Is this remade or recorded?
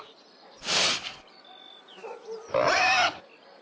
remade